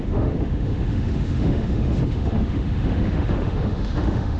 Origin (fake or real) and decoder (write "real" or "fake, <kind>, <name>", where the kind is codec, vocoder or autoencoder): fake, autoencoder, DAC-VAE